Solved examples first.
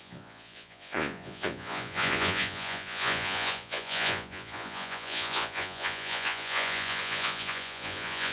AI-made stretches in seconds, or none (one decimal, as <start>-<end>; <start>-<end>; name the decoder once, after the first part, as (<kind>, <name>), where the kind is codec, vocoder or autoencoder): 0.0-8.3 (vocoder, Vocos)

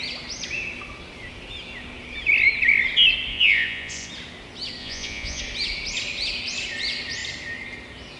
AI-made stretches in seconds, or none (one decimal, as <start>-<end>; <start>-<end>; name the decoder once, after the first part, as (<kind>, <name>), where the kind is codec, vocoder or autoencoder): 3.3-4.1 (vocoder, Vocos); 4.8-5.4

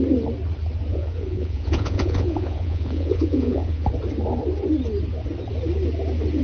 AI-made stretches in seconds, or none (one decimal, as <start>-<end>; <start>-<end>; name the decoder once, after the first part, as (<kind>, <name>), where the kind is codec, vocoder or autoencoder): 0.9-3.9 (vocoder, Vocos)